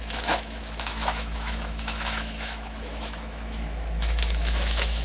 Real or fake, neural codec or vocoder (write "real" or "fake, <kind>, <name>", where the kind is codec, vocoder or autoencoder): fake, autoencoder, DAC-VAE